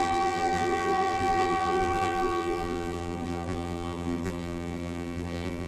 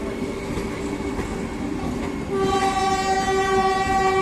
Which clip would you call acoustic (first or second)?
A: second